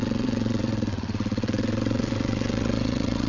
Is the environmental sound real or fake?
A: fake